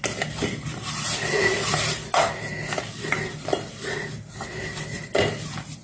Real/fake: real